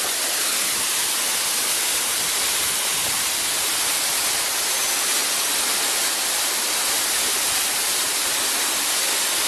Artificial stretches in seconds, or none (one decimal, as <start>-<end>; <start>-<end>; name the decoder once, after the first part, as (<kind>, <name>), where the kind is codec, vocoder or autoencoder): none